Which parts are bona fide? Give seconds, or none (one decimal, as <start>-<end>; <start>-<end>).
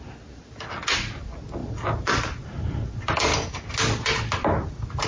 0.0-5.1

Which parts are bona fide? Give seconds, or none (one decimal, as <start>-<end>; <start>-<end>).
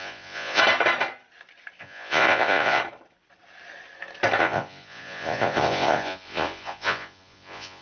0.6-1.8; 2.8-4.4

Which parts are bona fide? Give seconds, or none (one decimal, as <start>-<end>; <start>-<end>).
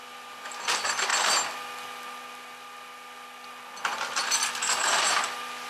0.0-0.5; 1.1-4.1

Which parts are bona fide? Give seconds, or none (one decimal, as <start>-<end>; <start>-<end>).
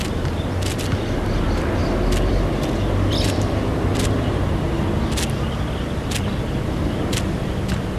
0.0-8.0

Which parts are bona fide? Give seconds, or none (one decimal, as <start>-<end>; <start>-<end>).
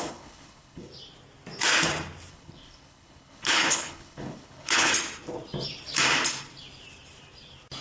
0.9-2.3; 4.9-7.8